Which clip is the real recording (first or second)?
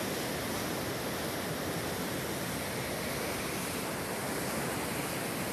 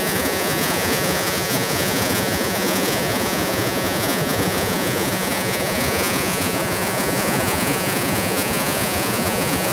first